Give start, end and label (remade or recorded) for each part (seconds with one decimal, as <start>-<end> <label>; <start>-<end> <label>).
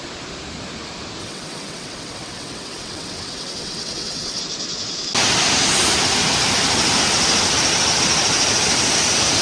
0.0-1.2 recorded; 1.2-4.4 remade; 4.4-9.4 recorded